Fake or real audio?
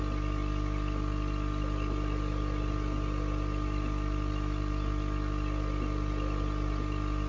real